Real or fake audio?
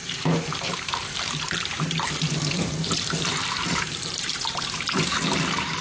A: fake